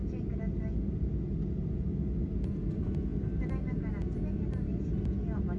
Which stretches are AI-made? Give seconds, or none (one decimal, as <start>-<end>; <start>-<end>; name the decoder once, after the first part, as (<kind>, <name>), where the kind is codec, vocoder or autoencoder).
none